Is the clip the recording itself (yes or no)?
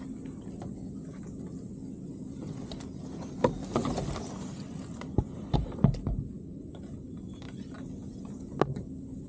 yes